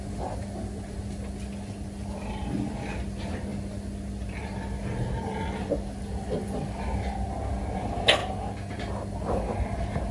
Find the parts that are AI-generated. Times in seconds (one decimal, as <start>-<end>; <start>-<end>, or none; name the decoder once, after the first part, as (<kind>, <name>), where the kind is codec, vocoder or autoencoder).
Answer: none